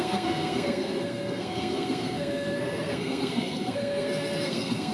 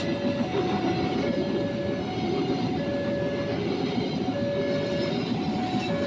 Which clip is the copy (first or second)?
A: first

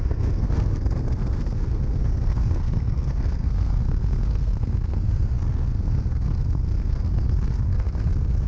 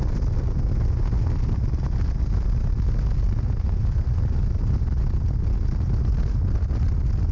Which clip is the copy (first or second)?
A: first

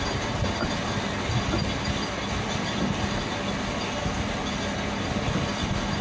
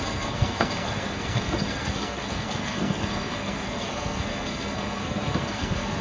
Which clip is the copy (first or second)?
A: second